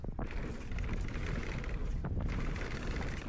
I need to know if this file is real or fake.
real